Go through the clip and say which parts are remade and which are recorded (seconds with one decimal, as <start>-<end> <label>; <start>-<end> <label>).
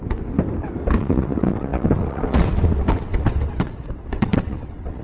0.0-1.0 recorded; 1.0-5.0 remade